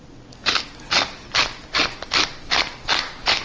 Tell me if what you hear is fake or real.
real